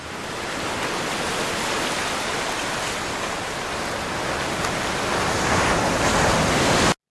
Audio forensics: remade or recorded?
recorded